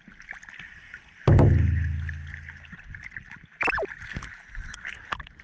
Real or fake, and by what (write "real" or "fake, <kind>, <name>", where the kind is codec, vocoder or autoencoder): real